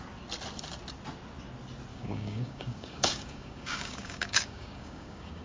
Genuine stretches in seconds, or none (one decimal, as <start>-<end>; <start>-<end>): 0.0-1.9